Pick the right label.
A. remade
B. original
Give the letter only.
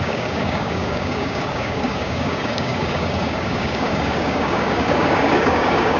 A